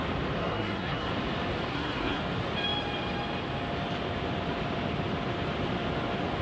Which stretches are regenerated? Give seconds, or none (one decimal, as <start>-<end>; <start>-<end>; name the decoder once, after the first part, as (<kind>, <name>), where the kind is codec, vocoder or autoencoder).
0.4-1.1 (codec, SNAC); 1.7-2.2